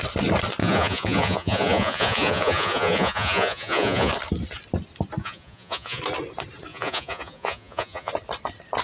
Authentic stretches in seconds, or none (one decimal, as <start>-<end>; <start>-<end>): 0.0-0.6; 4.1-5.2; 6.0-6.7; 8.1-8.8

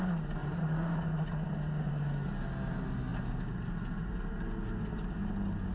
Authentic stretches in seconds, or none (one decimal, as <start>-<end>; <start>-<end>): 0.0-0.4; 1.9-5.7

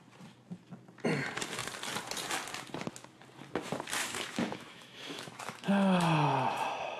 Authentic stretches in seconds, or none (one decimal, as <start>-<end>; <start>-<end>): 0.0-4.0; 5.7-7.0

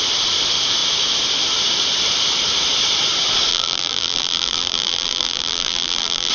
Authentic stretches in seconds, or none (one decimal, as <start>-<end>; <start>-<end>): 0.0-3.5

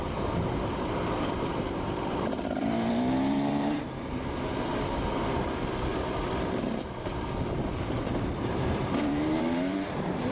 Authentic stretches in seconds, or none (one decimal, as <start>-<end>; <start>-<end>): none